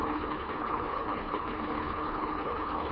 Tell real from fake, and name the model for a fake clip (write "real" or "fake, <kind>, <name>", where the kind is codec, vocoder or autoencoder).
fake, codec, HILCodec